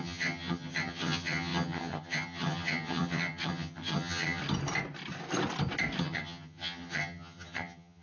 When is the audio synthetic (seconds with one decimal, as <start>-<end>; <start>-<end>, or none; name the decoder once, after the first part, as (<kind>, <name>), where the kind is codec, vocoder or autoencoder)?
0.0-4.4 (vocoder, HiFi-GAN); 6.0-8.0